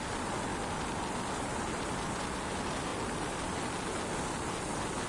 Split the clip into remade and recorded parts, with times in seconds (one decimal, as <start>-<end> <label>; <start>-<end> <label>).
0.0-0.5 recorded; 0.5-2.5 remade; 2.5-5.1 recorded